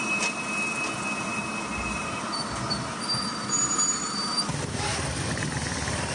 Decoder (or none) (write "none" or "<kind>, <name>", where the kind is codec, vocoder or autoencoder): none